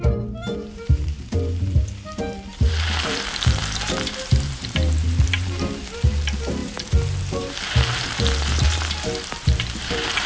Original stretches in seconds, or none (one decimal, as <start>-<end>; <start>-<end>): 6.6-7.2